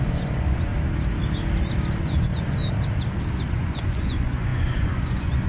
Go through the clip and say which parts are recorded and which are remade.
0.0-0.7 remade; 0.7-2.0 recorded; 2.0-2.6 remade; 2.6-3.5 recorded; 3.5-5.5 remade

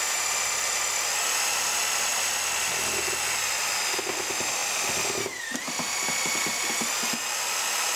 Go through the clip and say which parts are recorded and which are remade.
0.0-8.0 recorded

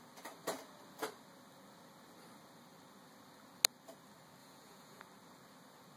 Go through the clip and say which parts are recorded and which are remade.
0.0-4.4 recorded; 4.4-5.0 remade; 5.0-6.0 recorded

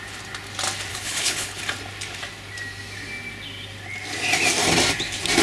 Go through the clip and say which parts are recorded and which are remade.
0.0-0.9 recorded; 0.9-1.6 remade; 1.6-5.4 recorded

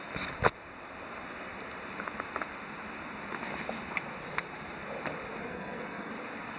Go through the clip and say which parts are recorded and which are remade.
0.0-5.4 recorded; 5.4-6.1 remade; 6.1-6.6 recorded